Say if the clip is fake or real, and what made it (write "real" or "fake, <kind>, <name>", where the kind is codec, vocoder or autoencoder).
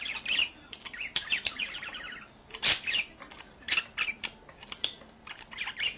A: fake, vocoder, BigVGAN v2